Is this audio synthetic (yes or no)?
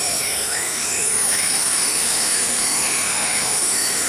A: yes